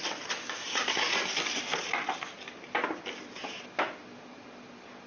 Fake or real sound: real